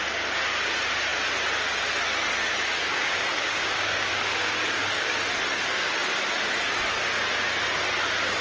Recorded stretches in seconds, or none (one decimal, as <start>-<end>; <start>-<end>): 0.0-2.9; 5.2-8.4